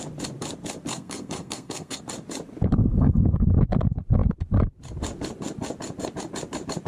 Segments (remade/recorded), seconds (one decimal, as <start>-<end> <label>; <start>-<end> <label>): 0.0-0.9 recorded; 0.9-2.0 remade; 2.0-2.8 recorded; 2.8-3.5 remade; 3.5-6.9 recorded